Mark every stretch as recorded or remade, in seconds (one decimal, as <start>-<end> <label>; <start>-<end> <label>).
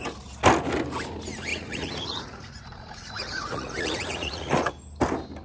0.0-1.5 recorded; 1.5-4.7 remade; 4.7-5.4 recorded